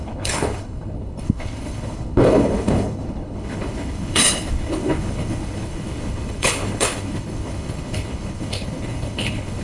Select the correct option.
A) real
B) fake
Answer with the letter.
B